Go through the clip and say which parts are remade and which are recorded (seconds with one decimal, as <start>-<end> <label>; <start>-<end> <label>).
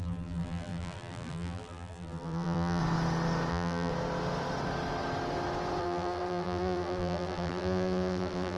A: 0.0-2.8 remade; 2.8-3.5 recorded; 3.5-3.9 remade; 3.9-5.8 recorded; 5.8-8.6 remade